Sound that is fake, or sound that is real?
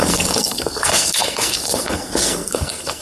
fake